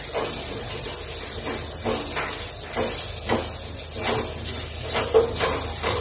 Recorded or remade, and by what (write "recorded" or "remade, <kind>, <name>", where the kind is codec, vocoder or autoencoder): recorded